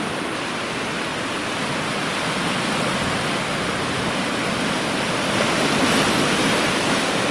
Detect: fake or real real